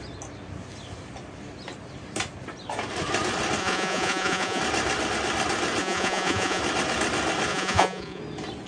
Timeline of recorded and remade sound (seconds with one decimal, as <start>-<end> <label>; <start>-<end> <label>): 0.0-3.6 recorded; 3.6-4.6 remade; 4.6-5.8 recorded; 5.8-6.6 remade; 6.6-7.5 recorded; 7.5-8.2 remade; 8.2-8.7 recorded